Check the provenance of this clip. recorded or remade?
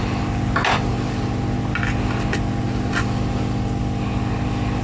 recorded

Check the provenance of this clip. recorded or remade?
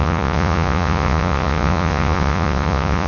remade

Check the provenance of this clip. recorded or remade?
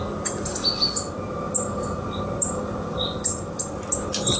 recorded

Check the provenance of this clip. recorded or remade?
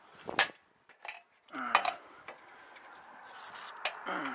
recorded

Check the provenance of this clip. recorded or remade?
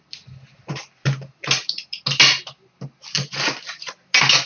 recorded